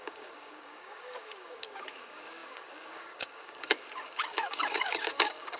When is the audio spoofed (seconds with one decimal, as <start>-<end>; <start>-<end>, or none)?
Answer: 0.0-5.6